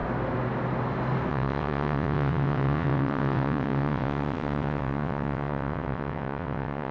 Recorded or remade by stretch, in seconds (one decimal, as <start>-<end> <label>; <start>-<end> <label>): 0.0-1.3 recorded; 1.3-6.9 remade